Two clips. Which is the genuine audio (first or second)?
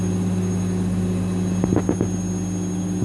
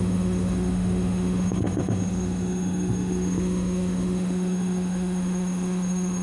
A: first